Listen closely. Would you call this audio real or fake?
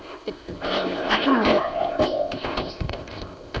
fake